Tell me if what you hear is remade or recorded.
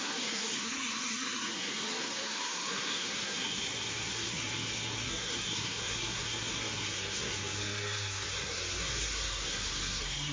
remade